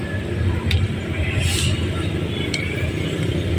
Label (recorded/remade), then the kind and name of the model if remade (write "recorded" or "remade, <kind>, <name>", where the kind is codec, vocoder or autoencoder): recorded